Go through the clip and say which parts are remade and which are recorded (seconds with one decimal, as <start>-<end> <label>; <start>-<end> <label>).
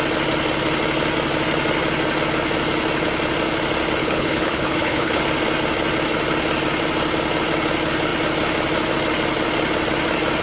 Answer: 0.0-4.0 recorded; 4.0-5.2 remade; 5.2-10.4 recorded